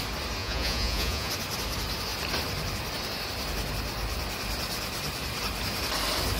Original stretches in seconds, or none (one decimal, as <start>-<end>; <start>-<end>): 0.0-0.4; 1.3-6.4

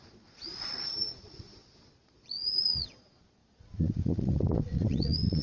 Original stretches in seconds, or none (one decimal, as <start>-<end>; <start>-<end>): none